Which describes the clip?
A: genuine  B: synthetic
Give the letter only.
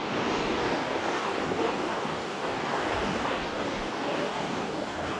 B